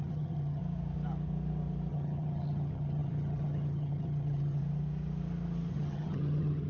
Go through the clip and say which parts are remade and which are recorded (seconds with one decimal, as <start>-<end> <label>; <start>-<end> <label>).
0.0-0.6 remade; 0.6-1.9 recorded; 1.9-4.6 remade; 4.6-5.7 recorded; 5.7-6.7 remade